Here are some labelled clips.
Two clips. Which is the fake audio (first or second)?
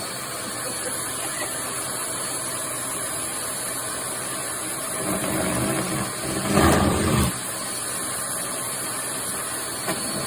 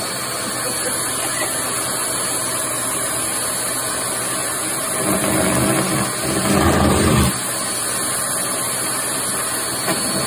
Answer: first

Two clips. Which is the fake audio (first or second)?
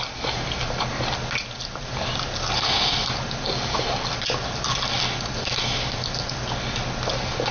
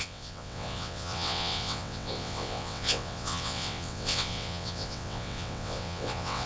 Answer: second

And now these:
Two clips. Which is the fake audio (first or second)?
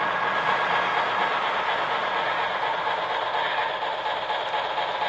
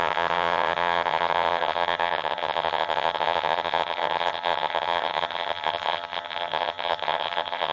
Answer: second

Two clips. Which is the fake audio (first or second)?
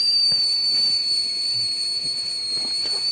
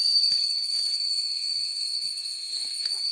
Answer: second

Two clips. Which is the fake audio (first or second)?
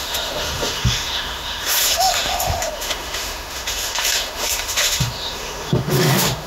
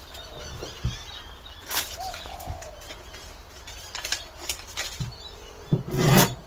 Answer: first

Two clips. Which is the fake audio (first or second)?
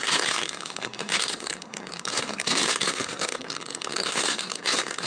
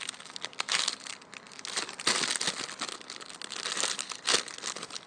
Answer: first